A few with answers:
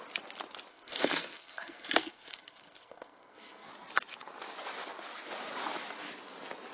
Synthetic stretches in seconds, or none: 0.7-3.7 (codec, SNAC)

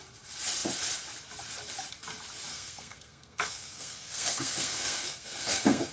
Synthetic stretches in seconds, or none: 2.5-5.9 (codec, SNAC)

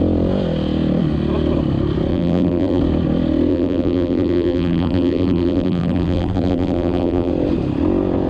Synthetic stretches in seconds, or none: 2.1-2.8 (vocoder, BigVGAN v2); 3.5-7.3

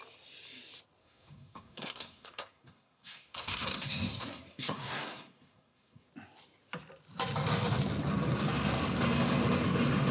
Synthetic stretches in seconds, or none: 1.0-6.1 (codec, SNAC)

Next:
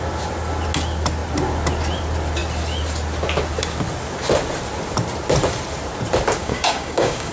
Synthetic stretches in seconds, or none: 6.4-7.3 (codec, DAC)